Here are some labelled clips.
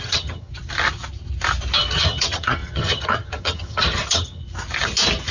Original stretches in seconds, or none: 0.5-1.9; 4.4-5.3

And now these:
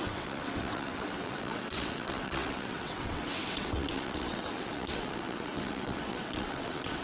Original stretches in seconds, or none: none

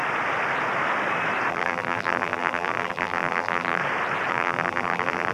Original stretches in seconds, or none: 0.0-1.5; 3.8-4.3

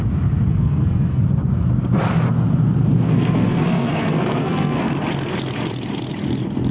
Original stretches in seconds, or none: 0.0-0.5; 1.2-3.1; 4.9-6.7

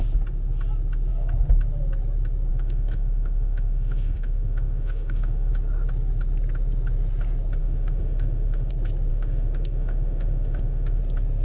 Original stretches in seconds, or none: 0.0-2.5; 5.5-7.6; 8.7-9.1; 11.0-11.4

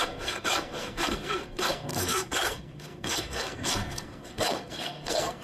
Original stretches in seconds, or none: none

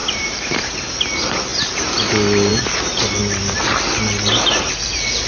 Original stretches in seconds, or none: 0.7-1.5; 2.0-5.3

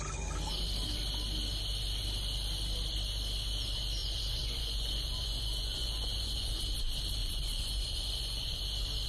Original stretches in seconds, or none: 0.0-4.0; 6.6-7.2; 8.6-9.1